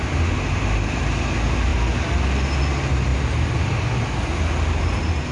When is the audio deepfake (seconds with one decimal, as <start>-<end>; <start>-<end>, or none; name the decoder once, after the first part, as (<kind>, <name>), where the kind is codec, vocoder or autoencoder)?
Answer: none